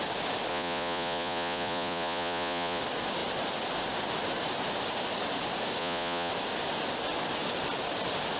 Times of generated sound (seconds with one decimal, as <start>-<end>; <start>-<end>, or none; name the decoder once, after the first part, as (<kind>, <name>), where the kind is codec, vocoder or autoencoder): 0.5-2.8 (vocoder, Vocos); 5.8-6.3